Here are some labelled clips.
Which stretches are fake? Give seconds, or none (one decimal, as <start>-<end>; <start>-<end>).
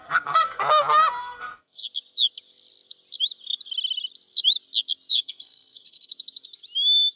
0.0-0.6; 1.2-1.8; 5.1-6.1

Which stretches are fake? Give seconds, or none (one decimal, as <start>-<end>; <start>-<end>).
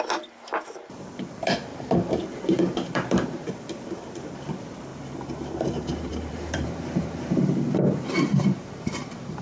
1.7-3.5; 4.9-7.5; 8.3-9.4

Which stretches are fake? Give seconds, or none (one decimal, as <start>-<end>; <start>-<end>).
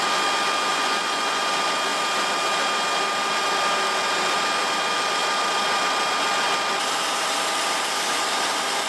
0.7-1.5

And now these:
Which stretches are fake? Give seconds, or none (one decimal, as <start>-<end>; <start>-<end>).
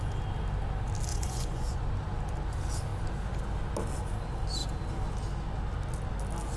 1.1-1.8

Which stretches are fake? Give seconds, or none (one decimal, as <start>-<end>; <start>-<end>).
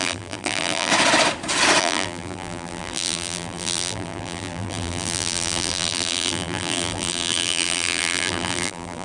0.0-0.9; 1.8-9.0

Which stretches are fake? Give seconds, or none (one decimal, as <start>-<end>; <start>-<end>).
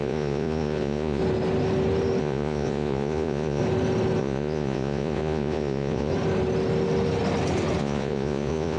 0.0-1.2; 2.2-3.6; 4.2-6.1; 7.8-8.8